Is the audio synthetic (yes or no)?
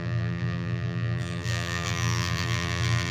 yes